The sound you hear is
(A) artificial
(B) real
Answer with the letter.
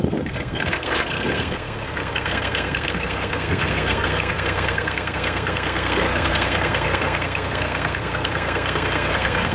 A